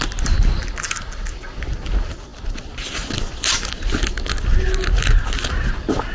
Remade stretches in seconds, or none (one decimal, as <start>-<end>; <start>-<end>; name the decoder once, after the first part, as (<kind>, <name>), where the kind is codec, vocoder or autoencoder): none